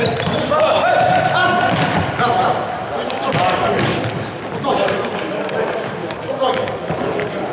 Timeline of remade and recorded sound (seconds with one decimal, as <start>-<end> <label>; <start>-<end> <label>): 0.0-3.9 recorded; 3.9-4.4 remade; 4.4-6.0 recorded; 6.0-7.0 remade; 7.0-7.5 recorded